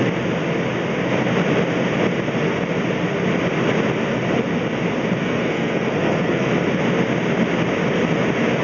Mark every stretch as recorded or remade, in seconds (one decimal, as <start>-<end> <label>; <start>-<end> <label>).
0.0-5.2 recorded; 5.2-6.5 remade; 6.5-8.6 recorded